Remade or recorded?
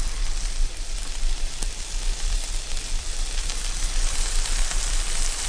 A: recorded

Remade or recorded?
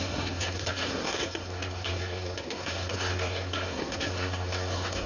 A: remade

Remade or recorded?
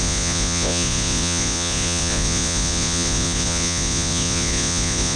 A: remade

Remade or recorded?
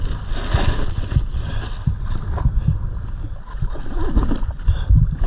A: recorded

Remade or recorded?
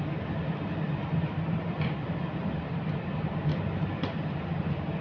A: recorded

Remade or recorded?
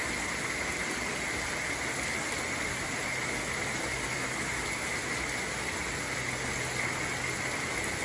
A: recorded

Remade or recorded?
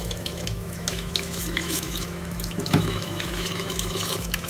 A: remade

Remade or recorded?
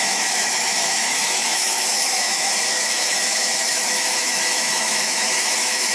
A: remade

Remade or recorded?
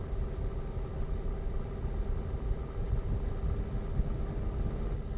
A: recorded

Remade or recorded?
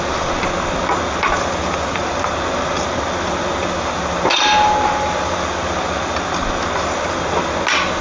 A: recorded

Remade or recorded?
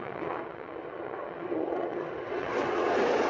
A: remade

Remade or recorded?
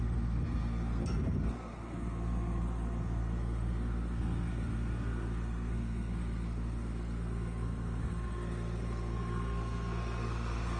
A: remade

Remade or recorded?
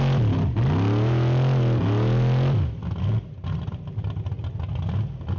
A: recorded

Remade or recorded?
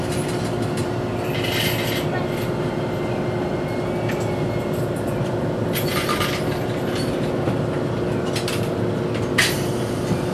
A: recorded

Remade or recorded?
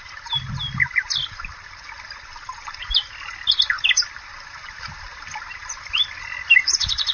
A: recorded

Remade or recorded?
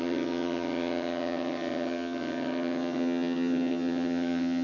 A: remade